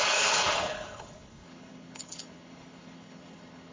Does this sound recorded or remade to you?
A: remade